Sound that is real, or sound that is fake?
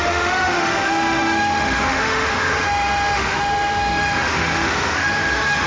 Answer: fake